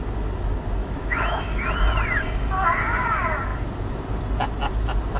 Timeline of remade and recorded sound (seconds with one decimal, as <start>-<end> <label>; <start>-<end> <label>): 0.0-0.8 recorded; 0.8-1.7 remade; 1.7-5.2 recorded